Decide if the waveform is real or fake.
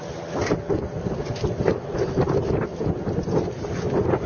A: real